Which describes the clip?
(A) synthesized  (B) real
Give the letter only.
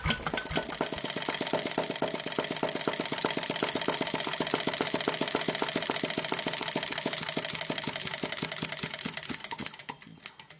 B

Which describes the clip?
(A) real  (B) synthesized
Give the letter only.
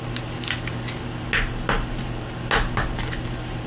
A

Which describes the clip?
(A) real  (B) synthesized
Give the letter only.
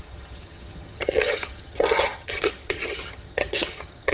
B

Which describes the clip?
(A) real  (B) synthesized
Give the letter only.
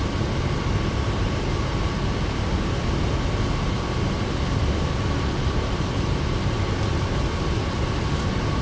A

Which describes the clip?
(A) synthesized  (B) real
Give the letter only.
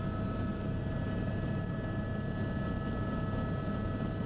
B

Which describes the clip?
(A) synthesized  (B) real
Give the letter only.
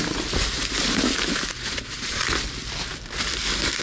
B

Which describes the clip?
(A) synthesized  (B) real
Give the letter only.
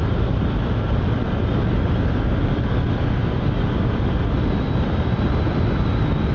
B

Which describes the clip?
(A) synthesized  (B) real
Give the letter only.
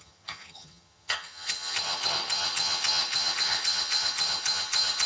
A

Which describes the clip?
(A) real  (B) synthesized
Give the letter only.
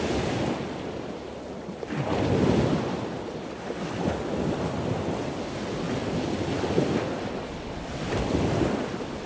A